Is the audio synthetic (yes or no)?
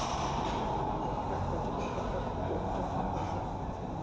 no